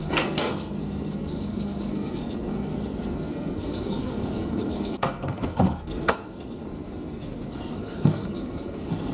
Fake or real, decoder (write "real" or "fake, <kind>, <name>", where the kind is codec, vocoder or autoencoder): fake, codec, SNAC